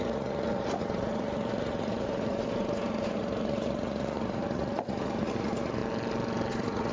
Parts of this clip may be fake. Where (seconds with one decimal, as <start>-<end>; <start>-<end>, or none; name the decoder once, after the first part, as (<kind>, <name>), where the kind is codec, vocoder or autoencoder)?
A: 0.0-5.8 (vocoder, Vocos); 6.5-6.9